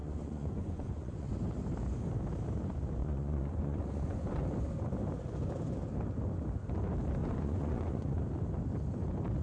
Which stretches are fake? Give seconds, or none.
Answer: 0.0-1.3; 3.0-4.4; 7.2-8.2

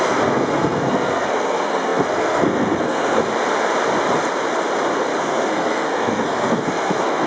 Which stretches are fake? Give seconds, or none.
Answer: 0.0-3.2; 5.2-7.3

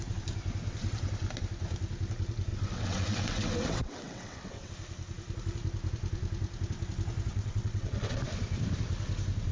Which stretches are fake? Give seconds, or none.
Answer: 2.5-4.7; 7.3-8.2

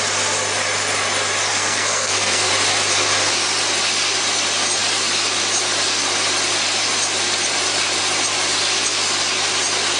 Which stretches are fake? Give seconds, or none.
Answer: 1.5-2.5

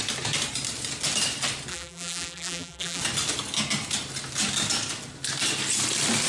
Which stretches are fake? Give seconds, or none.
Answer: 1.7-3.0